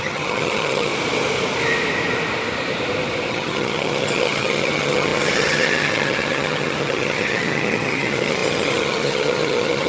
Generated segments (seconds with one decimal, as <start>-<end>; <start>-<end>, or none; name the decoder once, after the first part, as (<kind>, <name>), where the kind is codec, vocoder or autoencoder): 0.0-0.9 (vocoder, HiFi-GAN); 3.3-9.9